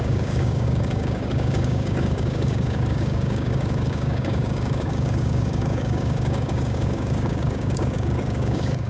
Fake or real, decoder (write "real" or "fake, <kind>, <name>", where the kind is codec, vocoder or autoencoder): fake, codec, DAC